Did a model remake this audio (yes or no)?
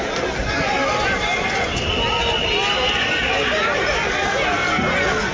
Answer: no